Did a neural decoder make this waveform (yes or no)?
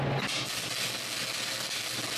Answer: no